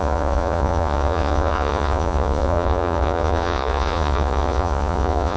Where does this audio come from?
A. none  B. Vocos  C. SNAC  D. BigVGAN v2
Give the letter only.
B